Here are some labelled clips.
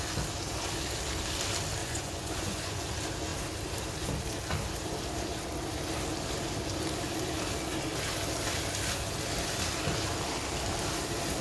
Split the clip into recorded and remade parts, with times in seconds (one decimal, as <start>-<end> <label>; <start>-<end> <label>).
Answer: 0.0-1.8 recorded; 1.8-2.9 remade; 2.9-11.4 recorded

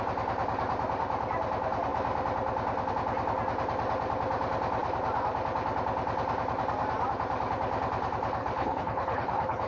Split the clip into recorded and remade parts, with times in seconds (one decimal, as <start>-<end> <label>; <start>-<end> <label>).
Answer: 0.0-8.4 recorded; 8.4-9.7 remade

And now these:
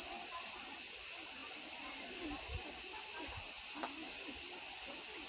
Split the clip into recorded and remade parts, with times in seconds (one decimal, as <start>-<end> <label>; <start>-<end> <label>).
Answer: 0.0-5.3 recorded

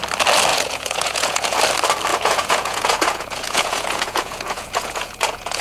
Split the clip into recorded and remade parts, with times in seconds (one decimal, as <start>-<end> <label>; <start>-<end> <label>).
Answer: 0.0-0.5 recorded; 0.5-1.6 remade; 1.6-2.1 recorded; 2.1-5.6 remade

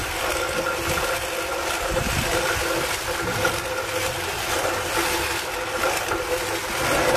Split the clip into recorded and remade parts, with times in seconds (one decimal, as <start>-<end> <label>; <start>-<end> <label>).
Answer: 0.0-7.2 recorded